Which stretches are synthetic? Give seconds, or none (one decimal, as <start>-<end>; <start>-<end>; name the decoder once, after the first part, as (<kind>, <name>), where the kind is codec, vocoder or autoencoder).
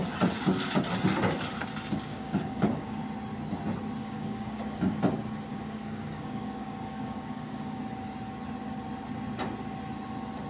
2.1-3.0 (codec, DAC); 4.0-5.0; 5.5-7.8